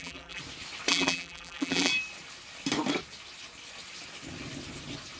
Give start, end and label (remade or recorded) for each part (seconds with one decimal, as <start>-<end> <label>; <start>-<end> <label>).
0.0-0.4 remade; 0.4-0.9 recorded; 0.9-1.9 remade; 1.9-5.2 recorded